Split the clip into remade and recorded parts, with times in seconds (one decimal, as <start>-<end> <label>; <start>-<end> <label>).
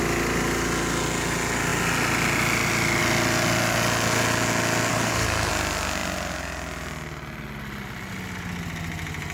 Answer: 0.0-4.9 recorded; 4.9-5.5 remade; 5.5-9.3 recorded